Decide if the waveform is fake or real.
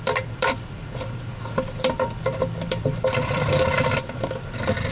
fake